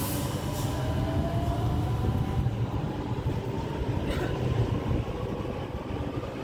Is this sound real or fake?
real